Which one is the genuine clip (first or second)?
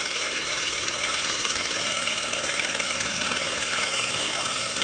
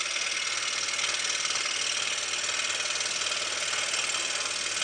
second